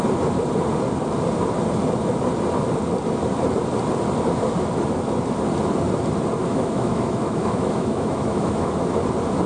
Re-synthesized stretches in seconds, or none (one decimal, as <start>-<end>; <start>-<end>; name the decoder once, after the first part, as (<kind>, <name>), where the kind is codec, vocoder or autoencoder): 6.4-8.7 (autoencoder, DAC-VAE)